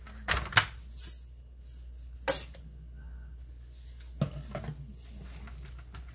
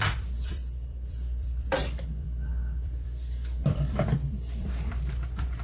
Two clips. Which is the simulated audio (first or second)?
second